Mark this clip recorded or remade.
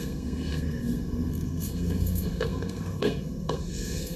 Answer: remade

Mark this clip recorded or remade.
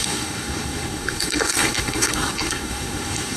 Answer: remade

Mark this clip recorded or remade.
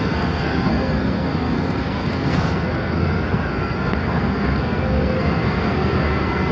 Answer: remade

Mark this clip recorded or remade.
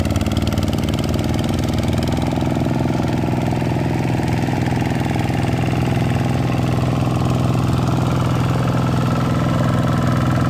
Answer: recorded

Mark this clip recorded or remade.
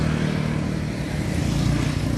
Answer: recorded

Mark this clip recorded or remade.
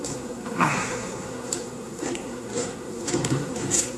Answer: remade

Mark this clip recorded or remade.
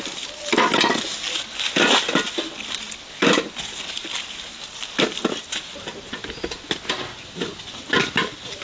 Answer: recorded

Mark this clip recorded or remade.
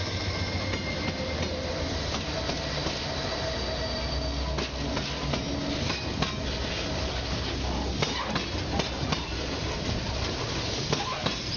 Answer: recorded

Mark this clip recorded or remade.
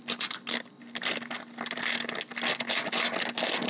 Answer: recorded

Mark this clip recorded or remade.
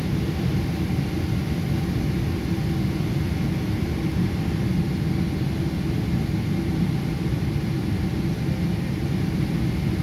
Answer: recorded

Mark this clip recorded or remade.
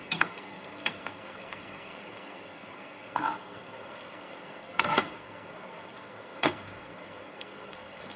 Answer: remade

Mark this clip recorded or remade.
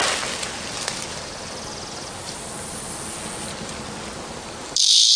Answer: recorded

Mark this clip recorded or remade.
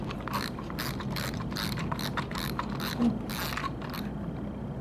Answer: recorded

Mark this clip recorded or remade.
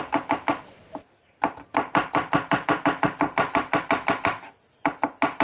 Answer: recorded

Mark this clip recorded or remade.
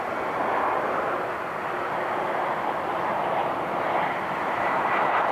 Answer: recorded